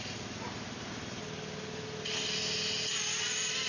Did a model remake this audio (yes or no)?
no